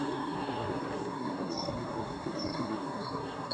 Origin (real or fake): fake